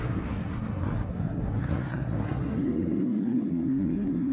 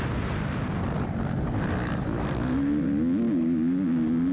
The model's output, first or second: first